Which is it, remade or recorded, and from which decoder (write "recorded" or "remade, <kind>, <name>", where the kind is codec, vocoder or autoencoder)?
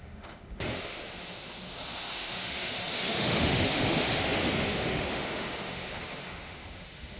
remade, autoencoder, DAC-VAE